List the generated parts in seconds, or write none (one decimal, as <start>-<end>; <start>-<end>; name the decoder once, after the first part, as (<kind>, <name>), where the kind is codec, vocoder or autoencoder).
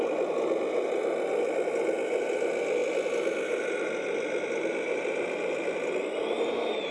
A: none